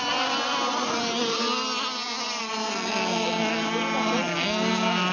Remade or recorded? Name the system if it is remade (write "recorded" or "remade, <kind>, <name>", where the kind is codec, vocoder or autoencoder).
recorded